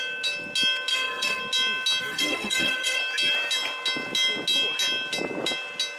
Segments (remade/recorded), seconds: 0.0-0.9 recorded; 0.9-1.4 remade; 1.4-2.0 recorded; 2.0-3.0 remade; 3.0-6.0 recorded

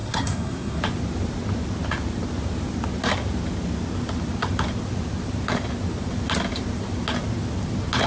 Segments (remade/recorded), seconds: 0.0-0.8 remade; 0.8-8.1 recorded

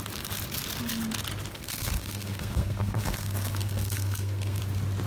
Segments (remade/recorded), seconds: 0.0-1.5 recorded; 1.5-4.6 remade; 4.6-5.1 recorded

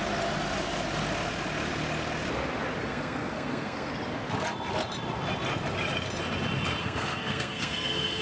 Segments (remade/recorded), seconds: 0.0-2.8 recorded; 2.8-3.9 remade; 3.9-6.8 recorded; 6.8-8.2 remade